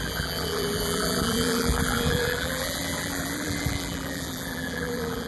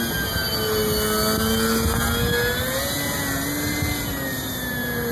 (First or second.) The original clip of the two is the second